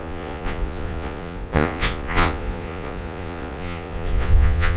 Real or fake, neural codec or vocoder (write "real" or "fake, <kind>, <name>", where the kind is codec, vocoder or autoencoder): fake, vocoder, Vocos